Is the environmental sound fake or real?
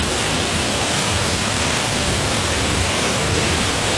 fake